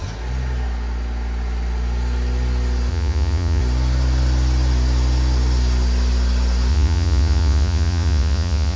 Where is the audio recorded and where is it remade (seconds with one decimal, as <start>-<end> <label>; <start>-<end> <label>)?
0.0-2.9 recorded; 2.9-3.6 remade; 3.6-6.7 recorded; 6.7-8.8 remade